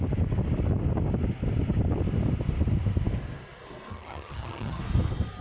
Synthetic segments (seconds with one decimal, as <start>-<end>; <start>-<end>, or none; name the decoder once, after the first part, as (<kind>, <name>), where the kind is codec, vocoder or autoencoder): 3.9-4.8 (vocoder, HiFi-GAN)